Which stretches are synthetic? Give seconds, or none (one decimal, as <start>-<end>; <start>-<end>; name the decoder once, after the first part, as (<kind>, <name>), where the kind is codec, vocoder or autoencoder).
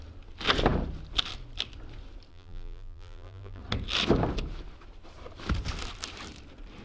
2.3-3.6 (vocoder, BigVGAN v2)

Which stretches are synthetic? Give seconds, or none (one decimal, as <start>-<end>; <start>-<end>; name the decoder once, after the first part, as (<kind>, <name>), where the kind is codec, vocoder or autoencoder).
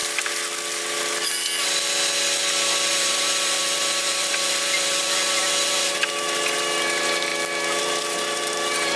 2.9-7.3 (vocoder, BigVGAN v2); 7.8-9.0